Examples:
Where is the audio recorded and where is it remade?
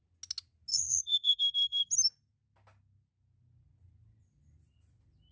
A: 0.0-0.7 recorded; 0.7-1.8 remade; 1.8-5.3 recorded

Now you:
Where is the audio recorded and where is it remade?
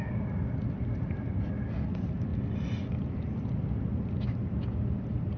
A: 0.0-1.3 remade; 1.3-1.8 recorded; 1.8-2.3 remade; 2.3-5.4 recorded